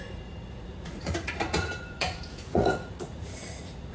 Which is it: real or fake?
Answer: fake